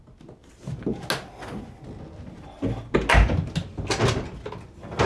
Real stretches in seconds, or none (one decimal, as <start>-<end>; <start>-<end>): 0.0-5.1